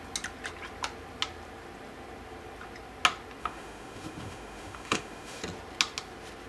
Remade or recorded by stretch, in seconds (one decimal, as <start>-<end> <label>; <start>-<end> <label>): 0.0-3.4 recorded; 3.4-5.4 remade; 5.4-6.5 recorded